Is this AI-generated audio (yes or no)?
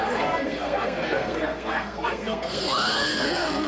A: yes